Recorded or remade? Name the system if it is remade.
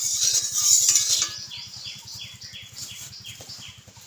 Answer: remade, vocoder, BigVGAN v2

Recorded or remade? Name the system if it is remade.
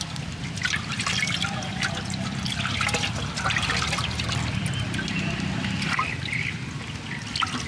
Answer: remade, vocoder, BigVGAN v2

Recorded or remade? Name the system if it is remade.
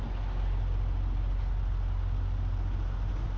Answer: recorded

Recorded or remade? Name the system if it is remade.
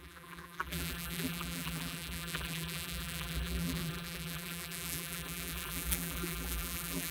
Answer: remade, vocoder, BigVGAN v2